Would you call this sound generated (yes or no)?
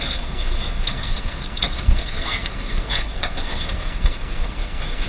yes